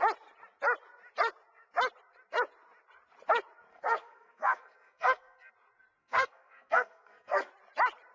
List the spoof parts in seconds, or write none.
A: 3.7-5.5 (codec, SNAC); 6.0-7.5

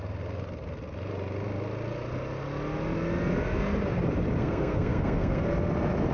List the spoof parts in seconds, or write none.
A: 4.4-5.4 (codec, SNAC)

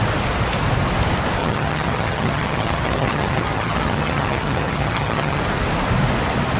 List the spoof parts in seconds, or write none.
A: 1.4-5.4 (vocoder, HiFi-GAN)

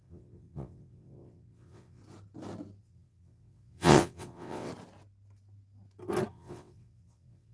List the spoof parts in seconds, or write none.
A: 0.0-2.0 (vocoder, WaveNeXt); 2.8-4.7; 6.3-7.5

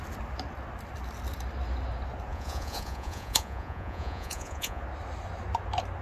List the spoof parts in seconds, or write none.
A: 2.3-4.8 (vocoder, Vocos)

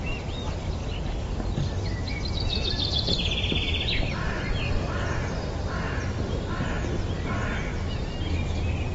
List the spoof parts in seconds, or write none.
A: 0.0-0.8 (vocoder, BigVGAN v2); 2.3-7.7; 8.2-8.9

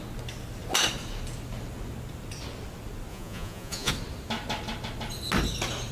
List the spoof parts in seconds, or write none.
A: 3.1-3.9 (vocoder, Vocos)